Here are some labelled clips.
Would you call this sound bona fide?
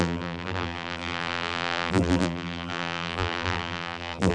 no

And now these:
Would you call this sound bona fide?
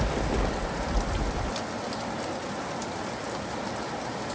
yes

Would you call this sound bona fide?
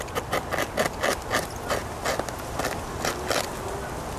yes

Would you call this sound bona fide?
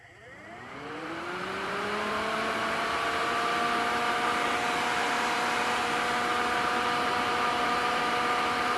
no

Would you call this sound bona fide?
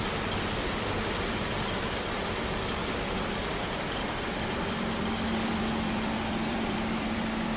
no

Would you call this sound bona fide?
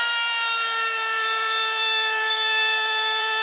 no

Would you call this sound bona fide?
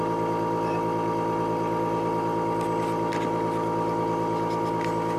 yes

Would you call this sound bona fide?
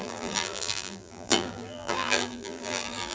no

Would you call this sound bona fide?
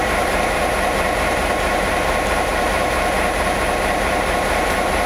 no